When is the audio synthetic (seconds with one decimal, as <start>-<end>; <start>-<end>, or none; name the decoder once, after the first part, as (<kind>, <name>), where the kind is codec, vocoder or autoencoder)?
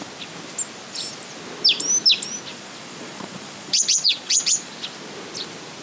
2.5-4.7 (vocoder, Vocos)